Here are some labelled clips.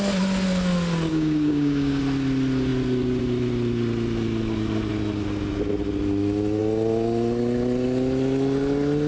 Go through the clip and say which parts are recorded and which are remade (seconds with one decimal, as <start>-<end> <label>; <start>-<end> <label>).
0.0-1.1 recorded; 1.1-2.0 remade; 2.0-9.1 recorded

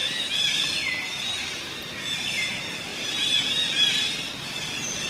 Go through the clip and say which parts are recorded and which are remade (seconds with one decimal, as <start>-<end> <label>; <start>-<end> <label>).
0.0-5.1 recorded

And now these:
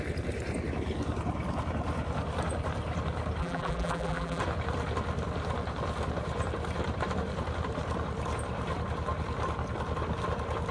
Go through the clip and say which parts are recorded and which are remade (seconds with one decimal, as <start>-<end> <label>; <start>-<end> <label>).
0.0-3.4 recorded; 3.4-4.4 remade; 4.4-10.7 recorded

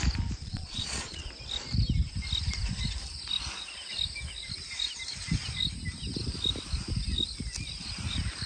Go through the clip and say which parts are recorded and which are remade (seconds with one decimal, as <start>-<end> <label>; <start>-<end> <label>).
0.0-0.4 recorded; 0.4-1.3 remade; 1.3-8.5 recorded

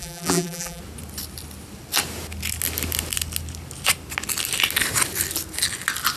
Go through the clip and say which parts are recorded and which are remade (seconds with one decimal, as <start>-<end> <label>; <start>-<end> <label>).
0.0-0.8 remade; 0.8-6.2 recorded

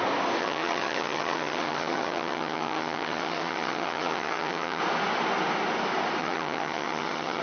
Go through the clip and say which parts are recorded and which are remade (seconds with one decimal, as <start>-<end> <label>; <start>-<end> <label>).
0.0-0.4 recorded; 0.4-4.8 remade; 4.8-6.2 recorded; 6.2-7.4 remade

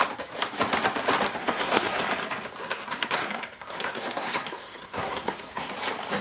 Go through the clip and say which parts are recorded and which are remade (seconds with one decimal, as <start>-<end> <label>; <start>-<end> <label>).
0.0-1.4 recorded; 1.4-2.0 remade; 2.0-2.6 recorded; 2.6-5.7 remade; 5.7-6.2 recorded